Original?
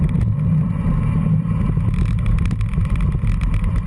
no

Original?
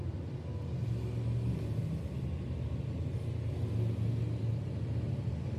yes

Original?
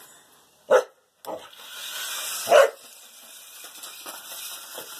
yes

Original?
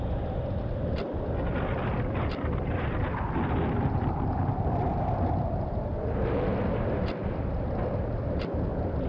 yes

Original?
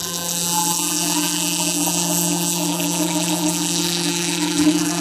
no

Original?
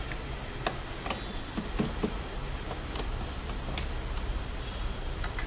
yes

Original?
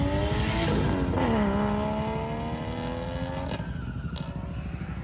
yes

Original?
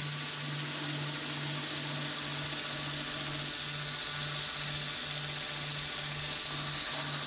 yes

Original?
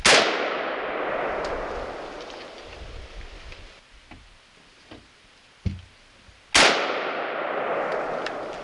yes